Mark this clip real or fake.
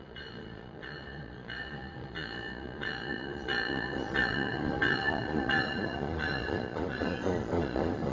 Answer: fake